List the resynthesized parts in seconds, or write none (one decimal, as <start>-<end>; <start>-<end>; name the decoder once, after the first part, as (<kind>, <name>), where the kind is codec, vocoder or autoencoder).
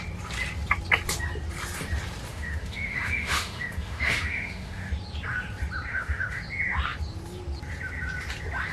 2.3-4.9 (autoencoder, DAC-VAE); 5.9-6.4